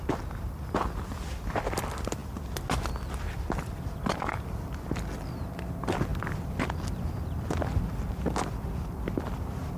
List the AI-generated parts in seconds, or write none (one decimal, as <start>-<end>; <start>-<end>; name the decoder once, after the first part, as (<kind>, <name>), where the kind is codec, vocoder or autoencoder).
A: none